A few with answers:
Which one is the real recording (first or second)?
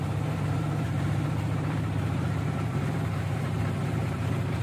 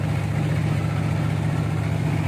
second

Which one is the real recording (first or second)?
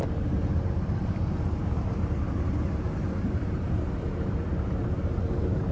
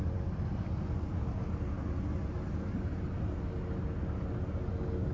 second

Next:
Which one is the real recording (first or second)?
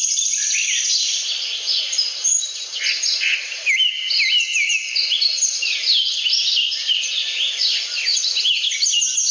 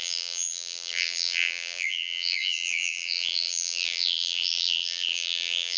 first